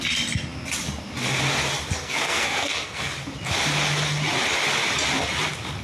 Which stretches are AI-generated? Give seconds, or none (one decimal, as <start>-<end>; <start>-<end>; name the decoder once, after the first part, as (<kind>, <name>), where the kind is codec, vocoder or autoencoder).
2.0-3.1 (codec, SNAC)